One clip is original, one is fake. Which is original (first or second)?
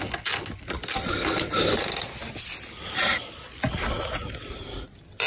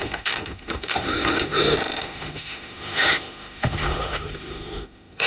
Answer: first